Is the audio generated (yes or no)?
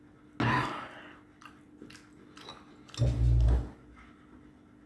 no